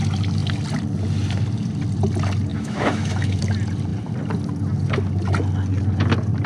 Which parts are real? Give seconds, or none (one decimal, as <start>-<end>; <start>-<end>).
0.0-2.5; 3.4-6.5